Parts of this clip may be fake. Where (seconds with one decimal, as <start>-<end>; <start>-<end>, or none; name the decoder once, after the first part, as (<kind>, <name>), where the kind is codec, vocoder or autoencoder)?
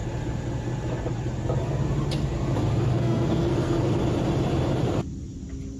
2.9-4.0 (codec, SNAC)